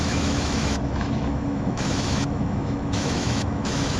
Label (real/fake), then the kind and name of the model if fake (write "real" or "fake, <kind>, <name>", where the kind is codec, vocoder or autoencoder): fake, autoencoder, DAC-VAE